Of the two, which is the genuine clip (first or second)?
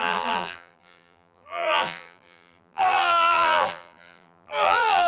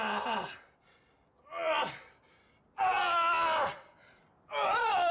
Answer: second